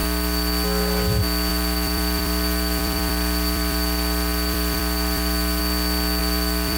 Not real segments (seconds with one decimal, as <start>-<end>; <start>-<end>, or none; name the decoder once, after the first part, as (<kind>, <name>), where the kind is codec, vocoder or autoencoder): 0.0-0.5 (vocoder, BigVGAN v2); 1.5-5.6; 6.2-6.8